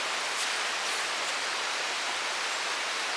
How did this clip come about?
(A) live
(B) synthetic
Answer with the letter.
A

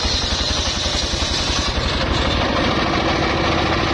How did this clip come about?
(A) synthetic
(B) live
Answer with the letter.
B